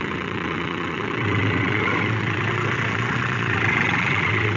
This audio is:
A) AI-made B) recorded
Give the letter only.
A